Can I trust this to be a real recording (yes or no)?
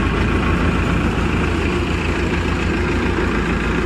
yes